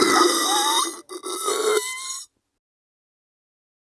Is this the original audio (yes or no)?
yes